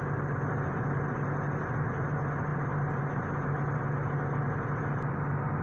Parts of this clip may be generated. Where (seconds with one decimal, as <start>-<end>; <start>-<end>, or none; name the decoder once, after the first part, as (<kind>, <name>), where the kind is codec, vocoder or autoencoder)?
none